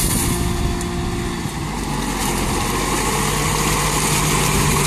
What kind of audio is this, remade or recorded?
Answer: recorded